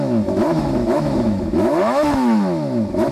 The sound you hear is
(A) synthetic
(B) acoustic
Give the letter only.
A